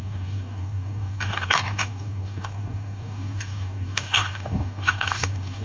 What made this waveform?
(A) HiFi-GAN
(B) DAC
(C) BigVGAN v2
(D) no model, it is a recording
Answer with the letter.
B